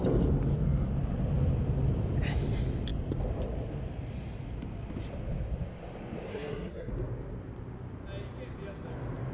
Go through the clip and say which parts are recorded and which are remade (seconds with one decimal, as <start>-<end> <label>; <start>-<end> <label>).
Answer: 0.0-6.3 recorded; 6.3-6.9 remade; 6.9-9.3 recorded